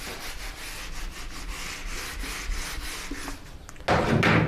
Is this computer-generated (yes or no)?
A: no